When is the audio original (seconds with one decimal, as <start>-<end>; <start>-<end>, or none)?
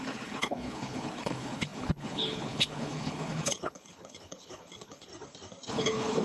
5.1-5.7